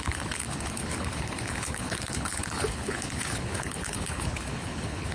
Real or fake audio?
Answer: fake